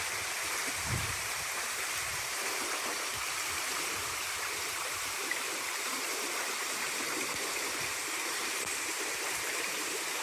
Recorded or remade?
remade